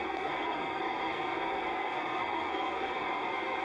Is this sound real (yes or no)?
no